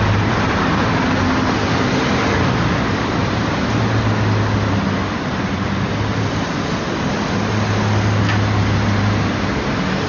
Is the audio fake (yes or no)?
no